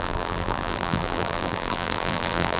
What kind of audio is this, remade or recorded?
remade